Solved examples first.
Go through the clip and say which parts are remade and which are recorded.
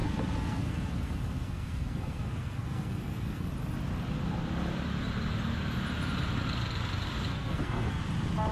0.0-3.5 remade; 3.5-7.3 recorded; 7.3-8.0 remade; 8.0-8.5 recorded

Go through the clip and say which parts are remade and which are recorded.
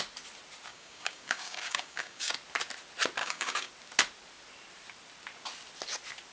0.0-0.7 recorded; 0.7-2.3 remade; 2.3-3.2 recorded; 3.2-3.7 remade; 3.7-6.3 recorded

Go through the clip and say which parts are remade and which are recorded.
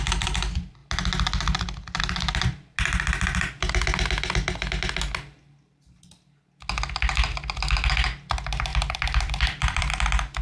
0.0-8.7 recorded; 8.7-9.9 remade; 9.9-10.4 recorded